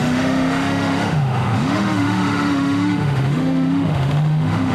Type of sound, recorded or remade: remade